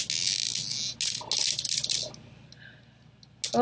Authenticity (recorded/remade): recorded